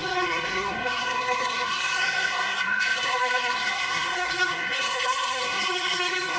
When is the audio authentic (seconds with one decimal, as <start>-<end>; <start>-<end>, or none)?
none

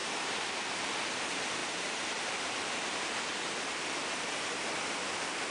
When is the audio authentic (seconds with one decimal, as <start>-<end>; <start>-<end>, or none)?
1.1-1.6; 4.5-5.5

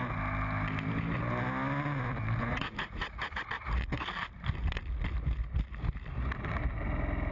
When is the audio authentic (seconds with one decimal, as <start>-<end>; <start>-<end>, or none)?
0.0-2.5; 3.4-7.3